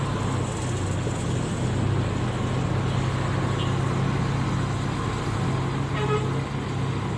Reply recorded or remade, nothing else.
recorded